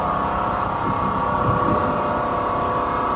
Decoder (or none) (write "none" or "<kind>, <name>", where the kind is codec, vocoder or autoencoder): none